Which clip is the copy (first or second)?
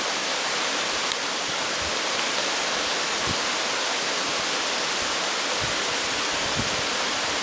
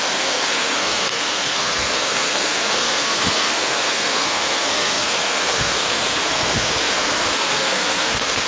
second